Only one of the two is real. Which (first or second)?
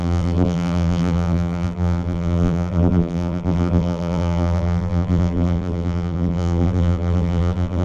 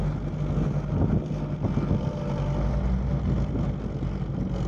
second